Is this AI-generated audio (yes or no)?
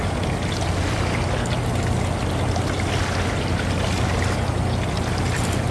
no